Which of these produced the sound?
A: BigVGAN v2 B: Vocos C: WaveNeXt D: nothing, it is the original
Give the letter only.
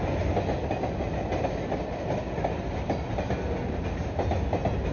D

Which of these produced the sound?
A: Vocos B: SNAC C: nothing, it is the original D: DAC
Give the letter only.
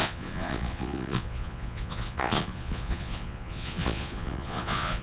A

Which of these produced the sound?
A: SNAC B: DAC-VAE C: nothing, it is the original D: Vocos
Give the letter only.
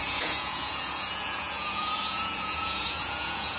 D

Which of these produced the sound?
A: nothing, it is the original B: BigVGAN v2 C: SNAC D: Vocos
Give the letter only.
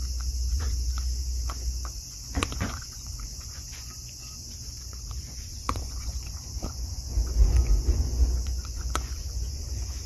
D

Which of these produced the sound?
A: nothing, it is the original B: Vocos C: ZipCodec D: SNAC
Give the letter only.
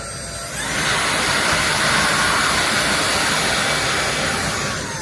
A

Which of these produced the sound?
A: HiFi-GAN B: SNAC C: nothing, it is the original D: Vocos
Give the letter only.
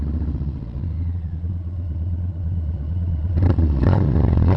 D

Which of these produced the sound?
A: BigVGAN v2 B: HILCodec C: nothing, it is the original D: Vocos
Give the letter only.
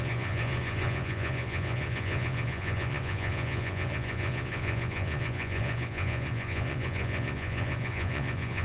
D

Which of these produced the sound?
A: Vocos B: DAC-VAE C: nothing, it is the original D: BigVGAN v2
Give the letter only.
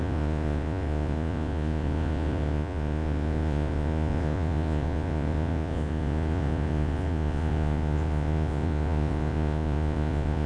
A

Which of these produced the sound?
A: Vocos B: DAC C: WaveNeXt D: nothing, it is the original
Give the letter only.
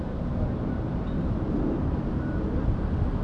D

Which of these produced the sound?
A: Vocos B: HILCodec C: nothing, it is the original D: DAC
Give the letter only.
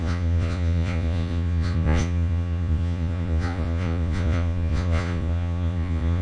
A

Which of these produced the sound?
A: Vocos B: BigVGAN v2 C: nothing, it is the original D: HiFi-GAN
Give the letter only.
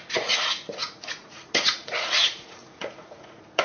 A